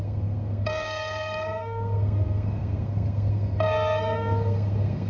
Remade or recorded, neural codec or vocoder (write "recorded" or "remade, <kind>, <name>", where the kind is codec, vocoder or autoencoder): remade, codec, SNAC